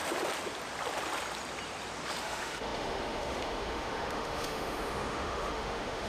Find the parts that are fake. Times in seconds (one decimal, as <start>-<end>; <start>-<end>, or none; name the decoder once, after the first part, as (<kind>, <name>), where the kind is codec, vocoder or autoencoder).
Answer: 2.2-6.1 (autoencoder, DAC-VAE)